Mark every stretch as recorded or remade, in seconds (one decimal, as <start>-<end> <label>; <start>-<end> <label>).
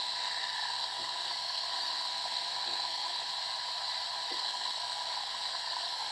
0.0-3.2 remade; 3.2-4.3 recorded; 4.3-6.1 remade